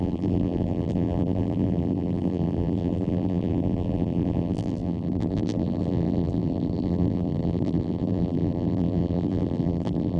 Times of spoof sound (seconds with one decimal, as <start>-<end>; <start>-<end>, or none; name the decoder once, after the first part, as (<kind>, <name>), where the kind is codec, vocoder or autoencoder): 0.0-10.2 (vocoder, BigVGAN v2)